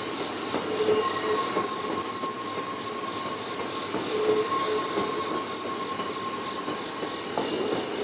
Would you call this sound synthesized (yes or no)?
no